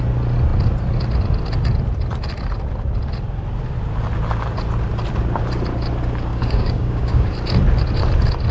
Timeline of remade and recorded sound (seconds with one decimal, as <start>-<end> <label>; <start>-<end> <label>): 0.0-6.3 recorded; 6.3-7.3 remade; 7.3-8.5 recorded